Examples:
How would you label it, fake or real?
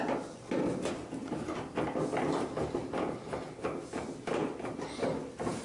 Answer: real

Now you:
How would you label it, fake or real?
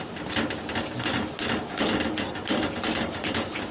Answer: real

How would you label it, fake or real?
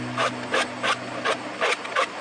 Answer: real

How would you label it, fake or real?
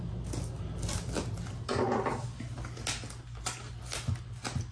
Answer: real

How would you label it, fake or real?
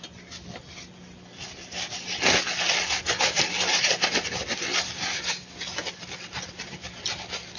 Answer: real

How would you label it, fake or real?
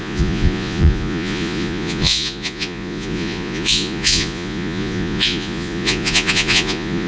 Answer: fake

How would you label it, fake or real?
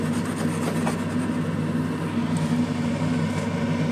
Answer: real